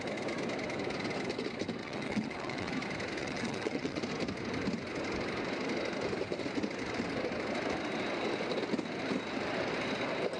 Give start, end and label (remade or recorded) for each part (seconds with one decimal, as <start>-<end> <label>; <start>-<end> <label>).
0.0-1.8 recorded; 1.8-2.7 remade; 2.7-3.2 recorded; 3.2-4.0 remade; 4.0-10.4 recorded